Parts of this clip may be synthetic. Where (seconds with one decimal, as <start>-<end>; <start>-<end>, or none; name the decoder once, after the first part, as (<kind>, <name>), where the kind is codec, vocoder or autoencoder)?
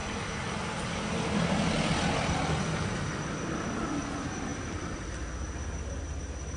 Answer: none